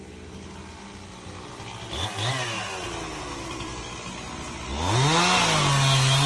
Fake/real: real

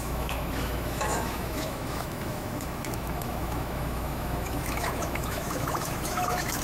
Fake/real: fake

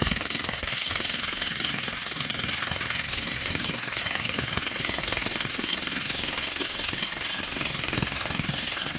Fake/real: fake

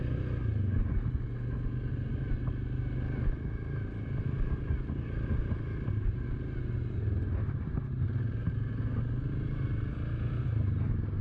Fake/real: real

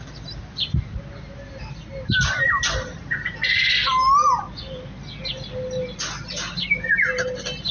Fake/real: real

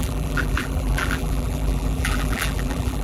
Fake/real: fake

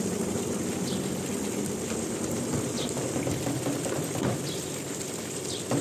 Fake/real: real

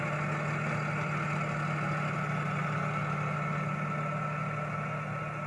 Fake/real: real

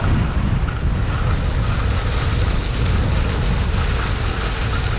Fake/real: real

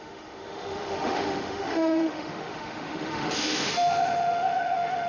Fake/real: fake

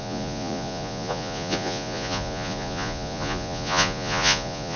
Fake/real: fake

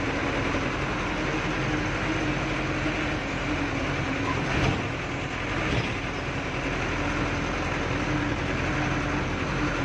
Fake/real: real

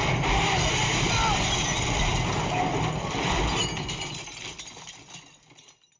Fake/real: real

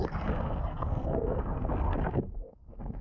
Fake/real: fake